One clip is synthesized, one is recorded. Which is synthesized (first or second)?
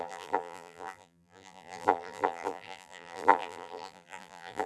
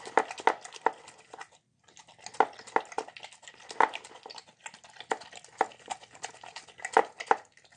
first